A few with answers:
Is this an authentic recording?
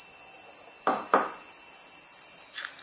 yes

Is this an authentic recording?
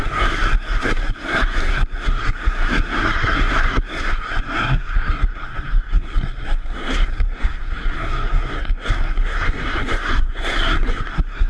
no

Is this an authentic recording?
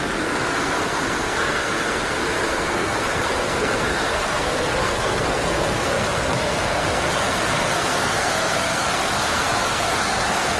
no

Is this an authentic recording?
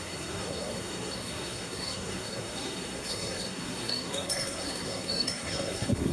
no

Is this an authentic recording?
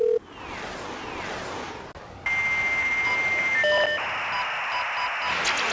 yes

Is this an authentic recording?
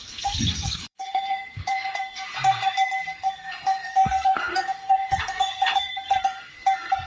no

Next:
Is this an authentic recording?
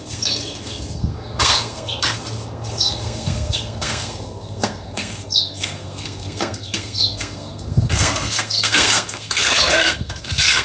no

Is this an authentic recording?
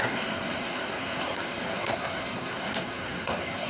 no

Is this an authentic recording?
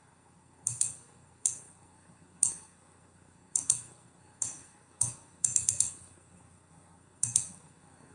no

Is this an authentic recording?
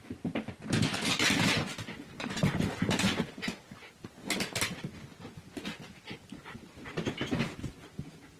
yes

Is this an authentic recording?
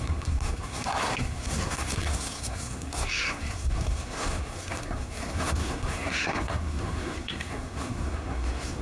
no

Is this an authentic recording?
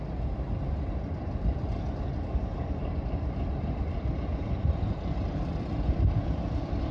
yes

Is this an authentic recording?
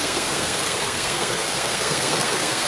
no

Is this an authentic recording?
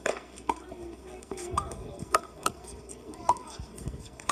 no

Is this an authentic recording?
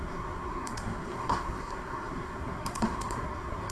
no